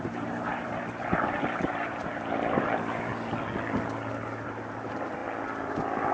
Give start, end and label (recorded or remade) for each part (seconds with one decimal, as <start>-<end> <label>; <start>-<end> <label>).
0.0-3.1 remade; 3.1-4.1 recorded; 4.1-5.2 remade; 5.2-6.1 recorded